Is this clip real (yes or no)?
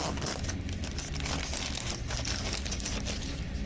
yes